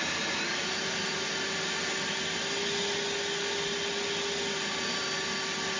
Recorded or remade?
recorded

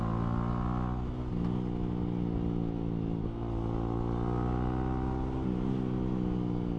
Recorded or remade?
recorded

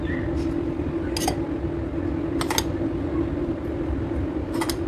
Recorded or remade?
recorded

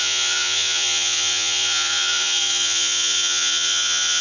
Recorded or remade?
remade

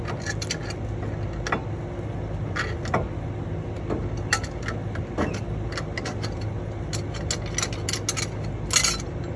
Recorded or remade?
recorded